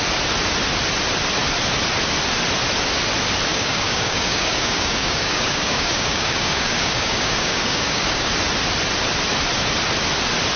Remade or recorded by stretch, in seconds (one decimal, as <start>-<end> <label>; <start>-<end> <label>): 0.0-3.5 recorded; 3.5-8.3 remade; 8.3-10.6 recorded